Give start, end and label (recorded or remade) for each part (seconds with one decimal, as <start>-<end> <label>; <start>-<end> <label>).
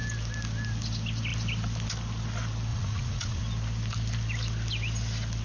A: 0.0-2.7 recorded; 2.7-3.4 remade; 3.4-5.4 recorded